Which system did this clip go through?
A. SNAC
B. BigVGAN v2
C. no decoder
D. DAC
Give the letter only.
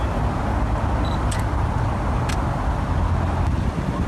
C